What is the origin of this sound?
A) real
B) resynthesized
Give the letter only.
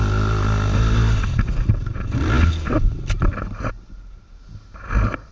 A